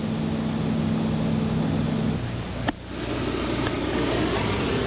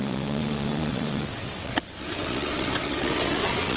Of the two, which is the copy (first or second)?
second